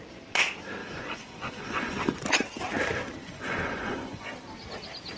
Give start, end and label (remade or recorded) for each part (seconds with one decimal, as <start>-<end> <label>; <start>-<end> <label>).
0.0-0.8 recorded; 0.8-2.2 remade; 2.2-3.2 recorded; 3.2-4.3 remade; 4.3-5.2 recorded